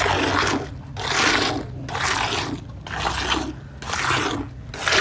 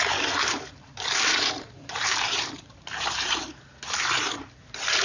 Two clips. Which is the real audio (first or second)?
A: first